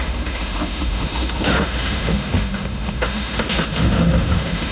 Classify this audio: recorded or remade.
remade